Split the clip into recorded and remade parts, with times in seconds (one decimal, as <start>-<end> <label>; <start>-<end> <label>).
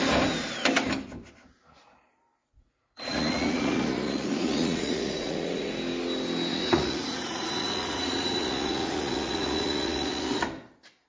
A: 0.0-2.4 recorded; 2.4-5.7 remade; 5.7-6.5 recorded; 6.5-10.4 remade; 10.4-11.1 recorded